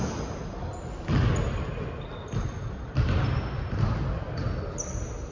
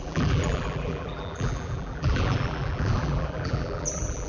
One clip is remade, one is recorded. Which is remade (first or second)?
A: second